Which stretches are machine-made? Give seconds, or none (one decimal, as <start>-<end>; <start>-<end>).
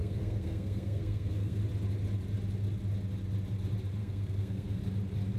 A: 0.0-1.6; 4.0-4.8